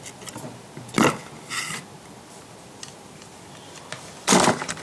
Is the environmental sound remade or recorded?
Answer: recorded